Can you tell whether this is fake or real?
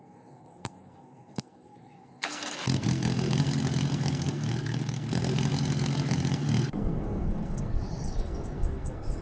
fake